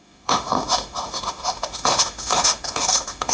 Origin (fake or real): fake